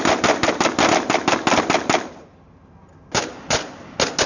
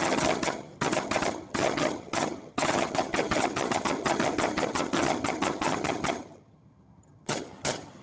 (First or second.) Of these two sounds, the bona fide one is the first